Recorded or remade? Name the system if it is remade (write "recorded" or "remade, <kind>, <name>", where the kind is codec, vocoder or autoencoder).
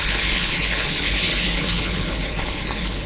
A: remade, codec, HILCodec